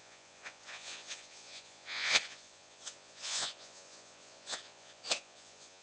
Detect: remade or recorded remade